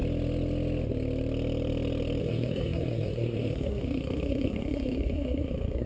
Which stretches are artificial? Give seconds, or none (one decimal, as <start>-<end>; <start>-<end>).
2.2-5.9